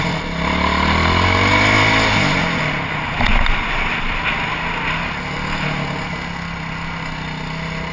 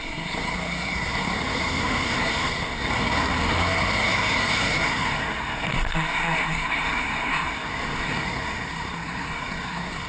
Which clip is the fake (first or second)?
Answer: second